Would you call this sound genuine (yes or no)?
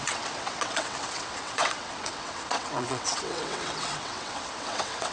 no